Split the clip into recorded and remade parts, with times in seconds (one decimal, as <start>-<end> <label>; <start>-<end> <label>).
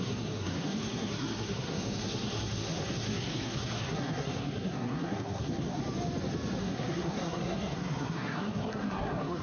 0.0-5.8 remade; 5.8-6.6 recorded; 6.6-9.4 remade